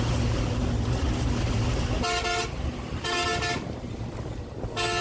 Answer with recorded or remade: recorded